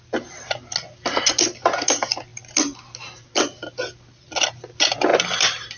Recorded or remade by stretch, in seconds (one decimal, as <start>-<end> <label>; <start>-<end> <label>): 0.0-5.1 recorded; 5.1-5.8 remade